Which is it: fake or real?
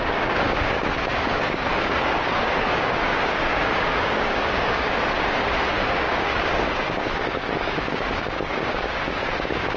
fake